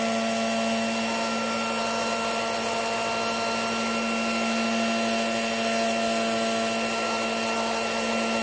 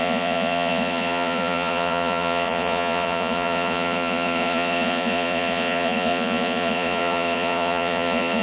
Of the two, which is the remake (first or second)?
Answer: second